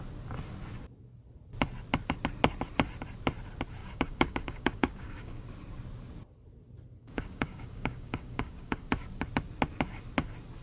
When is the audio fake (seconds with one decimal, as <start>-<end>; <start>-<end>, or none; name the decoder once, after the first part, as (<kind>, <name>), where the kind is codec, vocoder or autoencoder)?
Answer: 3.8-5.4 (codec, DAC); 7.0-8.9

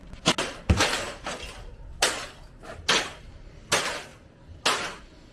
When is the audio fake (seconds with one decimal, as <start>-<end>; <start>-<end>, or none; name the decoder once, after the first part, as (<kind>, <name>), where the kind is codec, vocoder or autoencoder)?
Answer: none

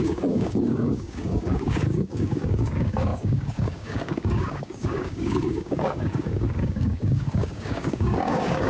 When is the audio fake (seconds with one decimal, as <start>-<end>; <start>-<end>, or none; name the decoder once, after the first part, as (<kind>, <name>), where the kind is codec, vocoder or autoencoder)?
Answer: 0.0-8.7 (codec, DAC)

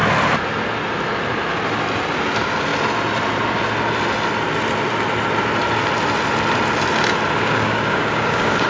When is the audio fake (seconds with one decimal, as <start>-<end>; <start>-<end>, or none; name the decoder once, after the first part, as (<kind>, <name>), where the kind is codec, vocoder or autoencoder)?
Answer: 7.4-8.7 (codec, DAC)

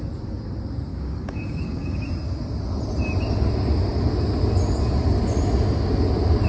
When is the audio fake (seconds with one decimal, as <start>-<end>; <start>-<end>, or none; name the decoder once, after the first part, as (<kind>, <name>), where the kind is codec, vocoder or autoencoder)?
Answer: 0.9-2.0 (codec, DAC)

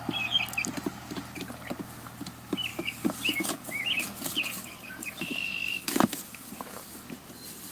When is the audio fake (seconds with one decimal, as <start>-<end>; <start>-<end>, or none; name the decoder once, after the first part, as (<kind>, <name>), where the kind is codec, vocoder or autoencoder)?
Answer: 2.7-6.9 (codec, DAC)

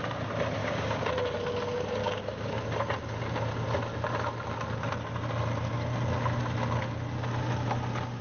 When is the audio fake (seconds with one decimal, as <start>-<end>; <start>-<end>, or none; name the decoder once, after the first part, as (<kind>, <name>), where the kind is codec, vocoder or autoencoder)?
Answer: 0.6-1.1 (codec, DAC); 2.0-2.6